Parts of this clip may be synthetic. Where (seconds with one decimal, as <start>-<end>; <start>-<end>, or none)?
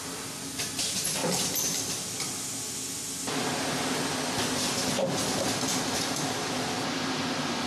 none